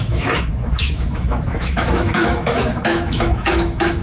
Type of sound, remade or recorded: remade